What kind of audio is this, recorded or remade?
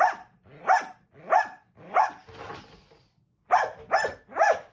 recorded